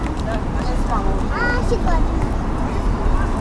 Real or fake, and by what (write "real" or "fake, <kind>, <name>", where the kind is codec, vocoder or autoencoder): real